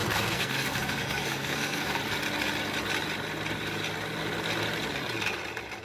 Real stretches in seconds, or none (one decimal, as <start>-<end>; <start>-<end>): 2.0-5.8